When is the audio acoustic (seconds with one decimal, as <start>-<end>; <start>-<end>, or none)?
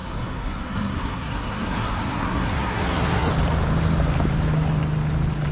3.3-5.5